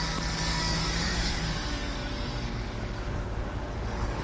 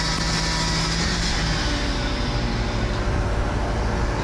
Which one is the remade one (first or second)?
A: first